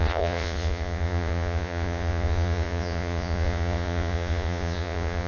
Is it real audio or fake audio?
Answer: fake